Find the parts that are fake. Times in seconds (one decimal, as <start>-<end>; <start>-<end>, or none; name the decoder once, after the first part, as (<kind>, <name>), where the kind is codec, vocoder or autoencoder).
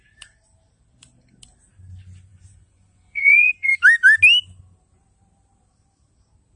2.3-3.7 (vocoder, Vocos)